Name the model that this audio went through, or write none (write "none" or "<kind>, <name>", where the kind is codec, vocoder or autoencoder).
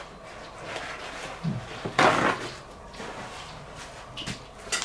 none